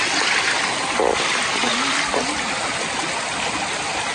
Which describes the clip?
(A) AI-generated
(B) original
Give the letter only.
B